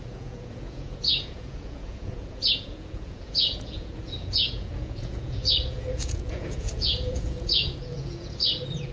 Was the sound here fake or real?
fake